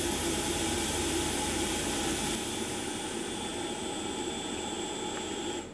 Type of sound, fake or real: real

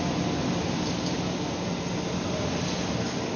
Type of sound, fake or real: real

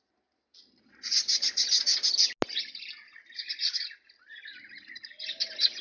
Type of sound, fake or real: real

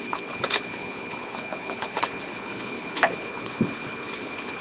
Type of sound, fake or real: fake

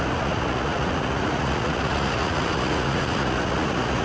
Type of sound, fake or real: fake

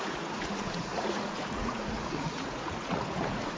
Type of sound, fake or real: fake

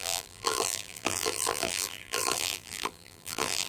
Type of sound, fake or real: fake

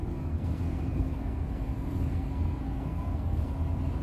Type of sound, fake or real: fake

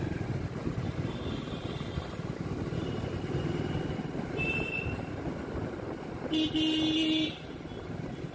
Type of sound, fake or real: real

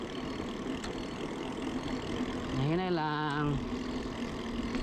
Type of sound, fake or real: real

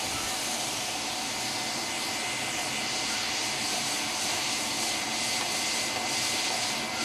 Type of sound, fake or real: real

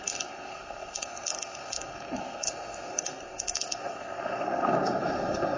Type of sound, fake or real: fake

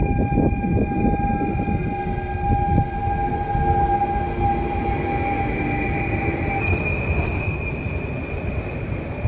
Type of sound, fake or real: real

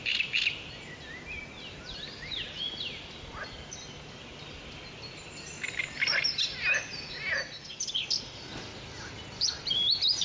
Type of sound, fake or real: real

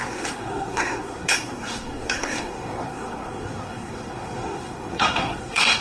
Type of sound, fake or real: fake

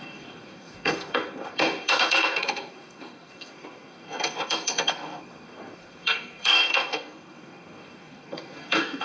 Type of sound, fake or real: fake